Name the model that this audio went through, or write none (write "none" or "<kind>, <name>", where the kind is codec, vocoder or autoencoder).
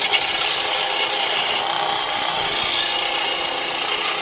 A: none